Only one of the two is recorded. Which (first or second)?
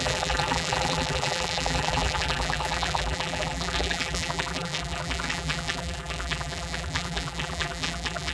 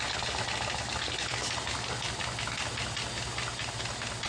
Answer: second